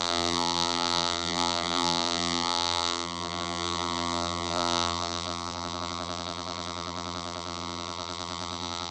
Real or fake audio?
fake